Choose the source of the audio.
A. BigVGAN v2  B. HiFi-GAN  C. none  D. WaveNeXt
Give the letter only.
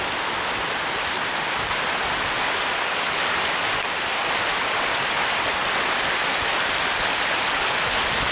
C